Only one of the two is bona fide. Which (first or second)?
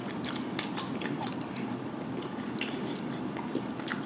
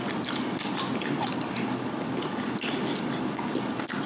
second